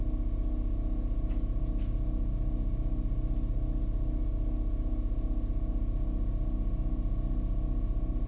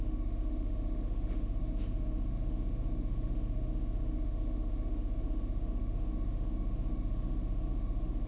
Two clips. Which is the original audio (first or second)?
first